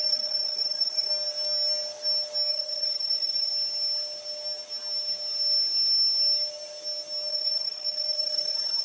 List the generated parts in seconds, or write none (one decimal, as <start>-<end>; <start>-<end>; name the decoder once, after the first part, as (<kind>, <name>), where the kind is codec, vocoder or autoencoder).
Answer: 0.0-1.1 (vocoder, HiFi-GAN); 2.5-3.5; 7.3-8.8